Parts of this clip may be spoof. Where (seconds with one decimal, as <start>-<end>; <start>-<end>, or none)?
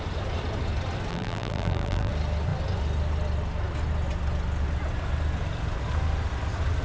1.1-2.1